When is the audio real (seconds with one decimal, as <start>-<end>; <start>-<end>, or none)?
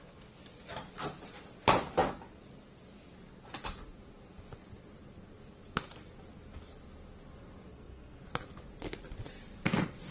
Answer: 0.0-7.7; 8.2-10.1